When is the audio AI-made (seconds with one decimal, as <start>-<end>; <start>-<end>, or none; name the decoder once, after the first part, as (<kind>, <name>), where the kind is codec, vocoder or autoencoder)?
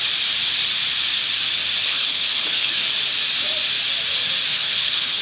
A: 1.8-2.8 (codec, HILCodec); 4.5-5.2